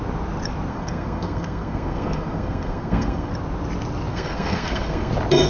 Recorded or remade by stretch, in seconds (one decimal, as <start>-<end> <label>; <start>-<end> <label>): 0.0-0.7 recorded; 0.7-3.3 remade; 3.3-4.1 recorded; 4.1-5.1 remade; 5.1-5.5 recorded